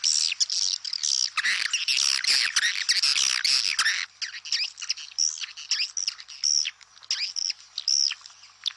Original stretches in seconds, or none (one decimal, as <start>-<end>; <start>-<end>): 0.0-8.8